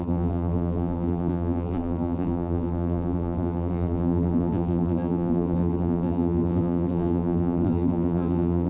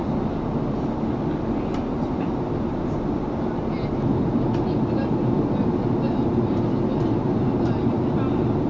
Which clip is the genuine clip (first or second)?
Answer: second